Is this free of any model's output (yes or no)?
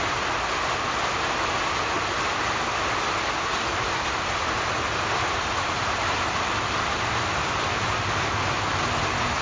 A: yes